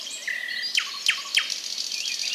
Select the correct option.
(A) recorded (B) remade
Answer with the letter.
A